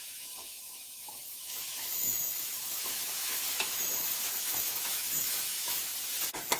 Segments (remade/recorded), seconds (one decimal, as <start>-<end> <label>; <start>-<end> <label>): 0.0-5.9 remade; 5.9-6.6 recorded